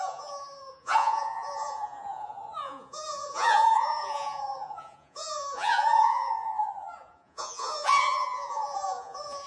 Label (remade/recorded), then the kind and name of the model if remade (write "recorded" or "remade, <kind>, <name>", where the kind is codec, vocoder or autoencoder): remade, vocoder, Vocos